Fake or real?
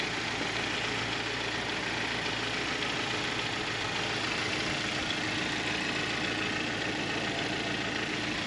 real